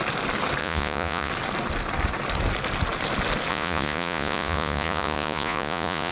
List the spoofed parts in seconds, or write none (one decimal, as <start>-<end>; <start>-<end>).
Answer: 0.6-1.3; 3.5-6.1